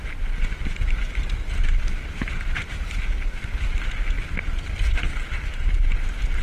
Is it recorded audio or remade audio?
recorded